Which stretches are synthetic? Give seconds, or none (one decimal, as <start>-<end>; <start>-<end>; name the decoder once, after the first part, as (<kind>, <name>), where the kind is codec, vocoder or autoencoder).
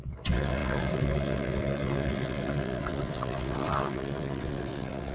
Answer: 0.0-5.1 (vocoder, WaveNeXt)